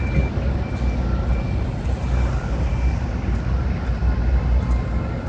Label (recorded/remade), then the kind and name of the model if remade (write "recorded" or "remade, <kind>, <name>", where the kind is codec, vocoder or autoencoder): recorded